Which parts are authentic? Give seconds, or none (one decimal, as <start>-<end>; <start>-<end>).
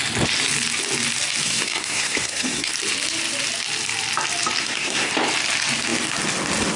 0.0-1.4; 2.7-4.6; 5.1-6.8